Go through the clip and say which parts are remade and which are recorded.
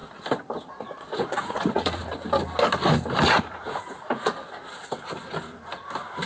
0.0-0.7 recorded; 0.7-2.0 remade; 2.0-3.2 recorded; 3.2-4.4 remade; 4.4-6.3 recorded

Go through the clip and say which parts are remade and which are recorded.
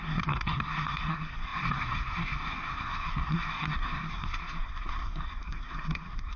0.0-6.4 remade